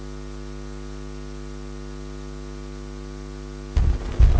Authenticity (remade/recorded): recorded